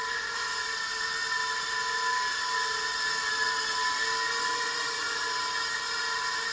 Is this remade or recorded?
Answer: recorded